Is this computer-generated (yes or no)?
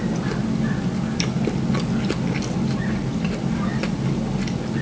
no